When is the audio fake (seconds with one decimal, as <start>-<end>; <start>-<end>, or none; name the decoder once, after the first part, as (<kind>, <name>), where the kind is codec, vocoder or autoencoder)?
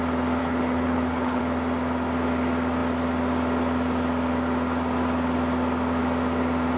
0.4-1.4 (codec, HILCodec)